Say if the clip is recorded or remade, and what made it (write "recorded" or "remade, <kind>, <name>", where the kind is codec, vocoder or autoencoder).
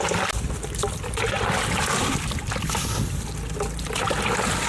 recorded